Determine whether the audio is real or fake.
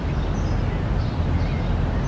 real